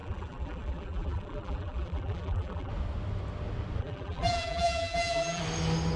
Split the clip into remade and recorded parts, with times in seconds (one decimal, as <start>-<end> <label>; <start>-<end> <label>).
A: 0.0-2.7 remade; 2.7-3.8 recorded; 3.8-5.4 remade; 5.4-6.0 recorded